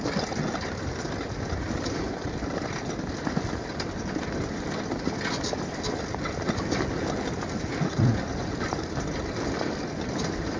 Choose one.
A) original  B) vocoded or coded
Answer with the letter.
A